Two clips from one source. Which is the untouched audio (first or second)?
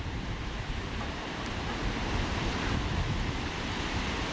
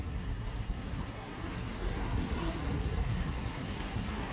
first